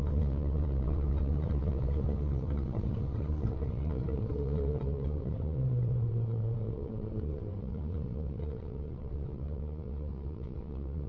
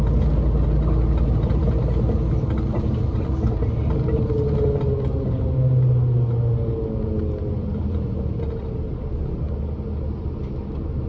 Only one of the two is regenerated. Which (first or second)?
first